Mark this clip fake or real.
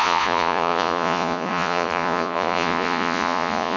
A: fake